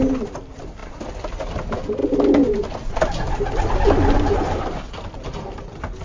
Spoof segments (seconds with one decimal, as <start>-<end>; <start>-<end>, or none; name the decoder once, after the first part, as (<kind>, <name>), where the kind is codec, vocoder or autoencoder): 0.0-2.0 (vocoder, BigVGAN v2); 5.6-6.0